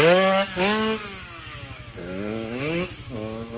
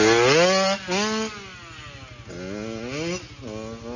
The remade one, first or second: first